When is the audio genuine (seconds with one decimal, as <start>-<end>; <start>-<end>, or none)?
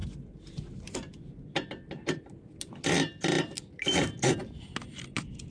0.0-5.5